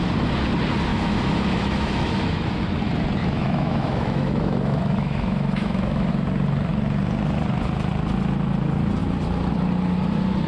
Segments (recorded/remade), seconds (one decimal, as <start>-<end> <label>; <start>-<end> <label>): 0.0-0.9 recorded; 0.9-2.4 remade; 2.4-3.2 recorded; 3.2-6.1 remade; 6.1-10.5 recorded